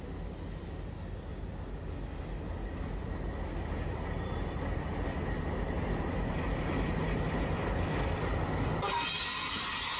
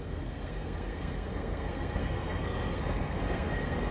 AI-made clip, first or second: second